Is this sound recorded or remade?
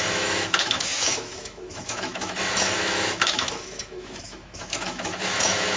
remade